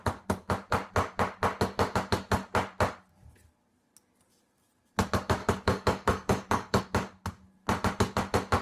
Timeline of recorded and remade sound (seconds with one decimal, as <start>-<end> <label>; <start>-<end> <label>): 0.0-5.4 recorded; 5.4-6.8 remade; 6.8-8.6 recorded